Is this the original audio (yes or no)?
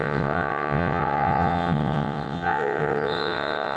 no